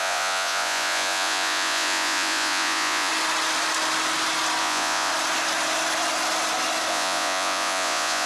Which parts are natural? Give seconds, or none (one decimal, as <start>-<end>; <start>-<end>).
3.1-4.6; 5.1-6.9